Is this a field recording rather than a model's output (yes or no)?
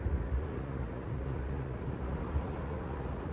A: no